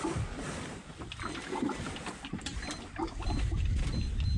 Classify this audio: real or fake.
real